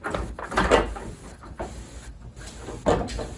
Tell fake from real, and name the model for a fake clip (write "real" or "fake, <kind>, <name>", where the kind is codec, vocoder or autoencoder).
real